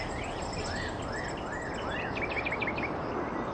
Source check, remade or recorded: recorded